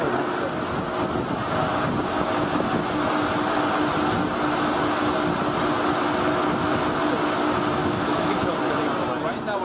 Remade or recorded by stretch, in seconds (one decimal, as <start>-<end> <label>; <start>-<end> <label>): 0.0-7.8 recorded; 7.8-8.5 remade; 8.5-9.6 recorded